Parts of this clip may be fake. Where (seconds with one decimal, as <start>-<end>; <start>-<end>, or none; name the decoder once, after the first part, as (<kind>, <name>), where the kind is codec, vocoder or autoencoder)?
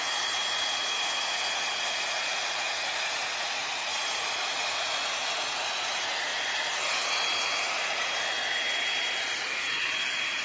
0.0-6.3 (vocoder, Vocos); 7.6-8.4; 9.2-10.4